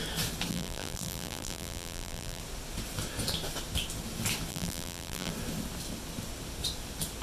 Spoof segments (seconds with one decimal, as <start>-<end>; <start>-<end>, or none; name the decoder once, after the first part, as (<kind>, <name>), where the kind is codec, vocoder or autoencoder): 0.5-2.4 (vocoder, BigVGAN v2); 4.5-5.3